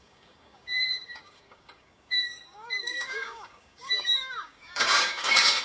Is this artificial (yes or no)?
yes